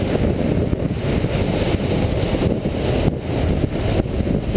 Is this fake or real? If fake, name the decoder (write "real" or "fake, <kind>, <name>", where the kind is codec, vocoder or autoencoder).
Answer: real